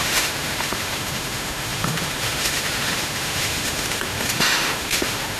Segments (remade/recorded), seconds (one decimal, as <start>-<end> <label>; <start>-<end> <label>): 0.0-5.4 remade